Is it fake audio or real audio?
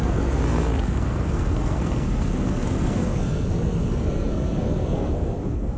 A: fake